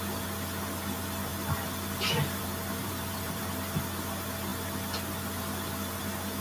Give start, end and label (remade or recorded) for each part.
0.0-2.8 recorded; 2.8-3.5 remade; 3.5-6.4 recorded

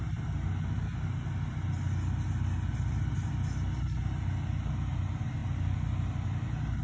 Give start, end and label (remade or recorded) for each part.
0.0-6.8 recorded

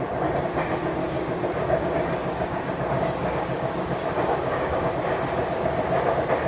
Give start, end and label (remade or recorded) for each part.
0.0-1.0 recorded; 1.0-4.9 remade; 4.9-6.5 recorded

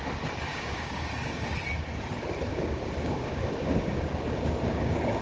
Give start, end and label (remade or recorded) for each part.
0.0-0.5 recorded; 0.5-1.5 remade; 1.5-2.5 recorded; 2.5-5.2 remade

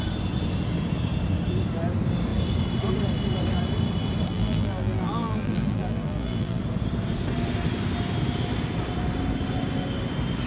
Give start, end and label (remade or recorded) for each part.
0.0-4.3 recorded; 4.3-6.6 remade; 6.6-10.5 recorded